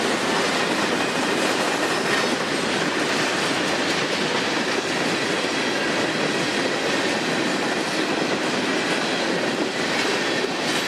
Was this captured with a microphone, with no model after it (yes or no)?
yes